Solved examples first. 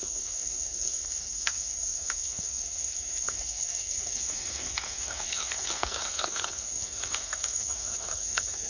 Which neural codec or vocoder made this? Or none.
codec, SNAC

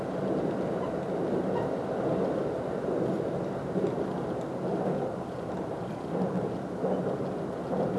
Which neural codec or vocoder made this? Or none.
none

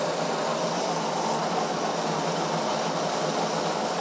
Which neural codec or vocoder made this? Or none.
none